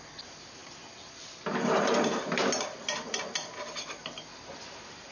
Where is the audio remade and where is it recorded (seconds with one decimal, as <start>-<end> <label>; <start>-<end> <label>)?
0.0-5.1 recorded